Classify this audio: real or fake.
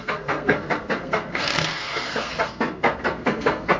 fake